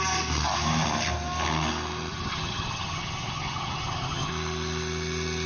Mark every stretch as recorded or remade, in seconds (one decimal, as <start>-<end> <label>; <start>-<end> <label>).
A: 0.0-2.1 recorded; 2.1-4.3 remade; 4.3-5.5 recorded